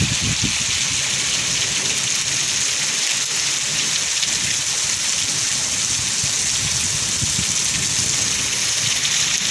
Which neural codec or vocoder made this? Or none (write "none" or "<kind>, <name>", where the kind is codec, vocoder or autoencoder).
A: none